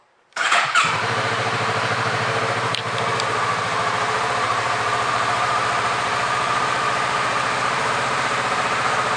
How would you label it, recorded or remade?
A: remade